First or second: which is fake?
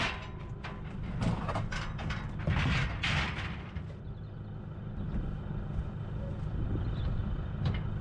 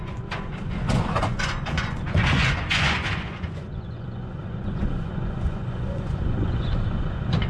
second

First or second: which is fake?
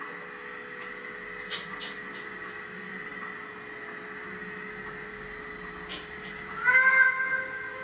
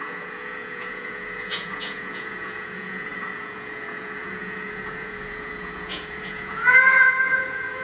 second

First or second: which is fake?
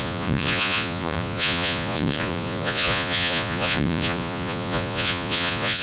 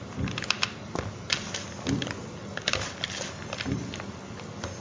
first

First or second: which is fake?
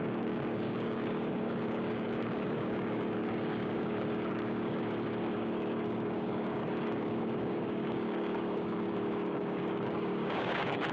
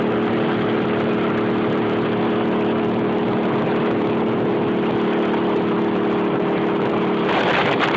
first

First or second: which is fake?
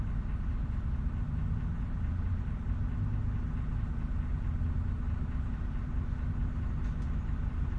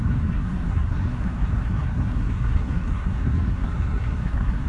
second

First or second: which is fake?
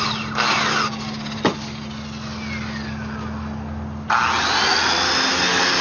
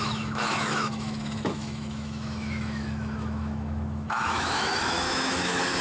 second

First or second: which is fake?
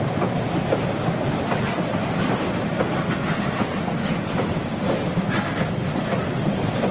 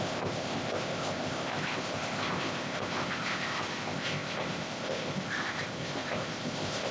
second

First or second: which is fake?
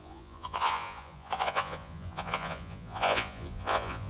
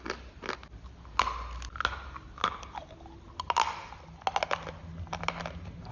first